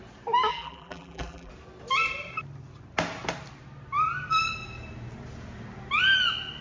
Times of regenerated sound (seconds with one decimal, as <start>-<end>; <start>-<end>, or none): 0.5-1.5